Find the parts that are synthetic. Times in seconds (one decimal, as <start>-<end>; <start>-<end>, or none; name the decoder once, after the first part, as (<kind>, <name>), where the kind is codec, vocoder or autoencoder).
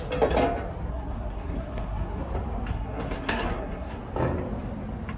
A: 0.9-2.2 (codec, SNAC); 2.7-4.0